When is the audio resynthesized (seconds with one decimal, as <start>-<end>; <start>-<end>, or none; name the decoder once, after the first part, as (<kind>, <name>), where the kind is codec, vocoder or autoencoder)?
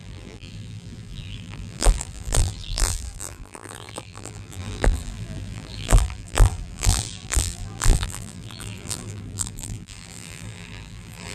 0.0-11.3 (vocoder, BigVGAN v2)